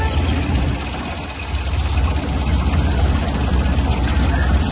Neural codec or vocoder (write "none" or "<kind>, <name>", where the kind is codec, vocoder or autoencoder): none